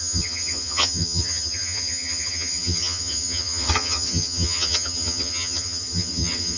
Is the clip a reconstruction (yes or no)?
yes